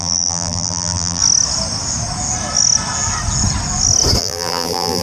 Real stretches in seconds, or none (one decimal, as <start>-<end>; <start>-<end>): 1.2-4.2